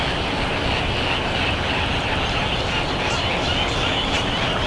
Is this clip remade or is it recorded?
recorded